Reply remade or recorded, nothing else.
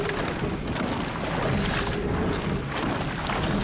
recorded